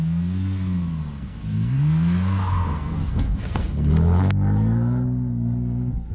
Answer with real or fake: fake